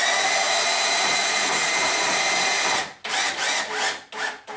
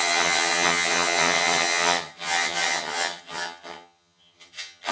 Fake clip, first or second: second